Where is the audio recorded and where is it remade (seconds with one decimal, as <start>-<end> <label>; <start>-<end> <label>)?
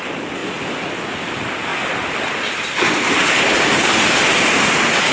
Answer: 0.0-5.1 recorded